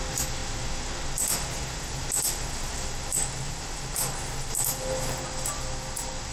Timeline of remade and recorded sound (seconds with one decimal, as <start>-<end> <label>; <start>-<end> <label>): 0.0-6.3 recorded